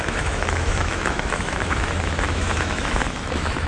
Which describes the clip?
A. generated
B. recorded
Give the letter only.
A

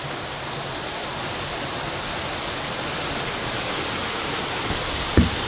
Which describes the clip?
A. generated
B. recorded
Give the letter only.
B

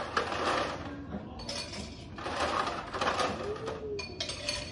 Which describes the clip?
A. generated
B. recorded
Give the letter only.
B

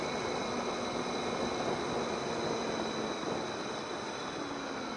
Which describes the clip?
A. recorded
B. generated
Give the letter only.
A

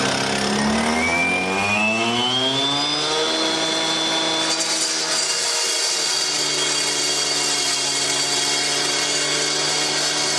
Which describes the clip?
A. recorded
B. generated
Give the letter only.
A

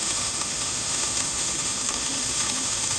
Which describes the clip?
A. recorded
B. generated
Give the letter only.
B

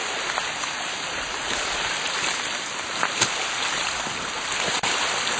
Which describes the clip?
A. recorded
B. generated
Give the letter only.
A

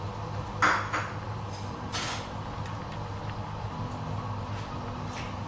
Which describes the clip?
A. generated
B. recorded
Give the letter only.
B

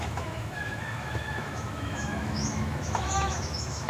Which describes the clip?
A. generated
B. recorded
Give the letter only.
A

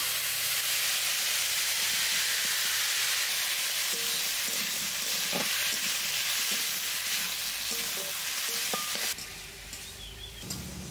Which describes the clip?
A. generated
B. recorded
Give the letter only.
B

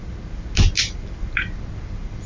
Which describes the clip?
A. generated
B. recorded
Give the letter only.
B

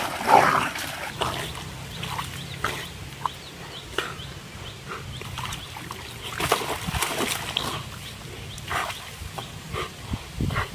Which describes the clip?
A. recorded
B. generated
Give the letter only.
A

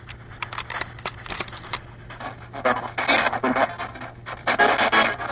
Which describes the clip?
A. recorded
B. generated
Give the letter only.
A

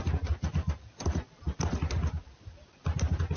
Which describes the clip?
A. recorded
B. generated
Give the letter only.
A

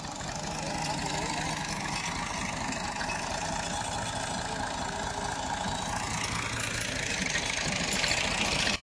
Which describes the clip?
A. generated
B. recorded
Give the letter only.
B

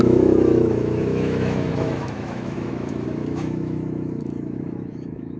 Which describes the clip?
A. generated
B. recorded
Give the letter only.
A